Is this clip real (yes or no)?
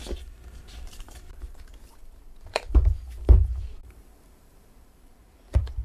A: no